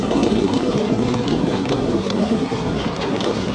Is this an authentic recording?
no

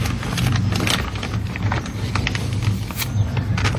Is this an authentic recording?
yes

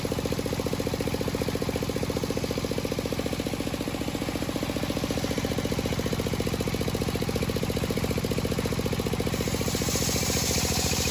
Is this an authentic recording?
yes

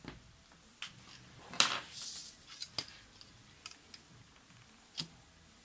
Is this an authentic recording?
yes